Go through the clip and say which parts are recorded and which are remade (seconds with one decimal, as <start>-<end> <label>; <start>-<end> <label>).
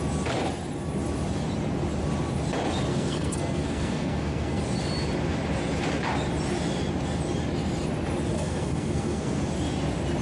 0.0-2.9 recorded; 2.9-4.6 remade; 4.6-8.3 recorded; 8.3-9.4 remade; 9.4-10.2 recorded